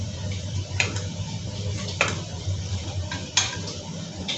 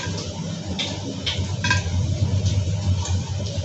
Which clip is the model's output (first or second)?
first